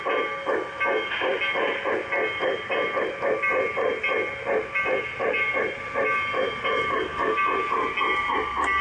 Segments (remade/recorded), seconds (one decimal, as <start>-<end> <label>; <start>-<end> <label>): 0.0-8.8 recorded